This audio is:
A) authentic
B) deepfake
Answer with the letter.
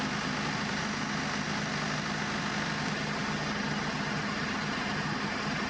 A